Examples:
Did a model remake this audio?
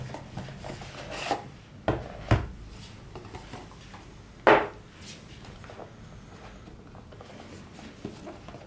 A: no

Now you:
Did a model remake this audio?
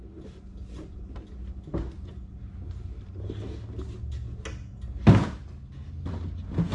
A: no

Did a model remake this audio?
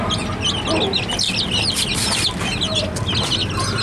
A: no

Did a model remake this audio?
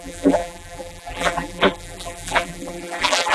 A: yes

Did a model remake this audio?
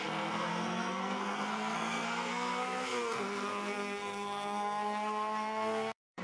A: yes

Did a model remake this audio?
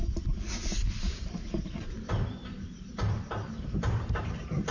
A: yes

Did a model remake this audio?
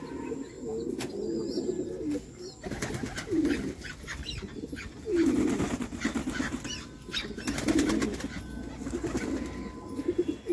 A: no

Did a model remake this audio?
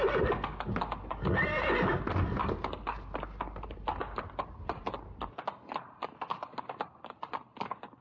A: no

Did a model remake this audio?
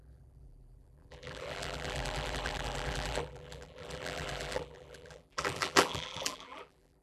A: yes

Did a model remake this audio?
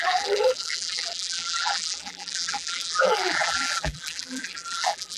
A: yes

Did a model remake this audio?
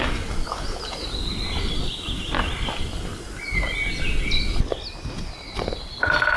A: no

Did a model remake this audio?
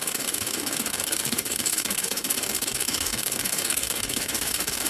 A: yes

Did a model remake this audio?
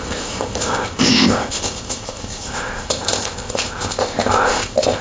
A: yes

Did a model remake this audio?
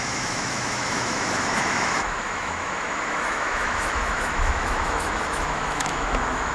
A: yes